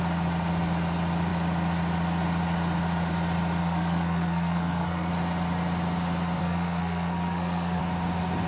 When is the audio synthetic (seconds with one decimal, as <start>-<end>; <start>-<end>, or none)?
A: 3.6-5.1; 6.4-7.8

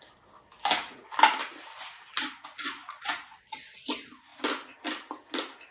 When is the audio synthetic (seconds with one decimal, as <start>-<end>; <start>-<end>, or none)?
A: 2.8-3.4

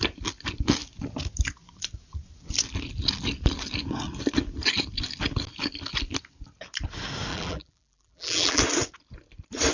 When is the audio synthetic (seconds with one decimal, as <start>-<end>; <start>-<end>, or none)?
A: 7.3-8.6